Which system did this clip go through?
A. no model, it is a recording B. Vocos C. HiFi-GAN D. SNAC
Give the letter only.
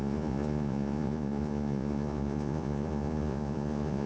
B